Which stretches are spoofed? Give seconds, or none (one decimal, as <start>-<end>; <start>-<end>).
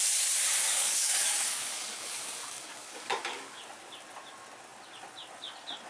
0.7-3.6